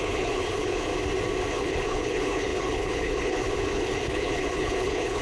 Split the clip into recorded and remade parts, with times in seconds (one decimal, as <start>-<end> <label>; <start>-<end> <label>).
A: 0.0-0.9 remade; 0.9-1.5 recorded; 1.5-5.2 remade